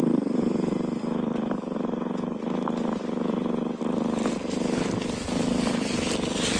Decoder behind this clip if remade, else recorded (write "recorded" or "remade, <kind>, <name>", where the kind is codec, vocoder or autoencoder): recorded